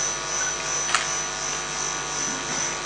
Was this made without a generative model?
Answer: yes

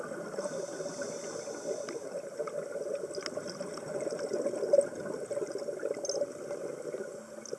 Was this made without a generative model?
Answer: yes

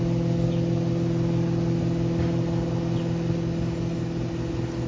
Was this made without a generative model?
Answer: yes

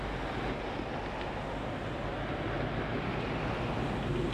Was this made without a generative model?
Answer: yes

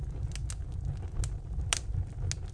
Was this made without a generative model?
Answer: yes